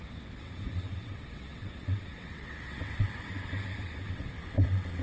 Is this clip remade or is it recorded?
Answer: remade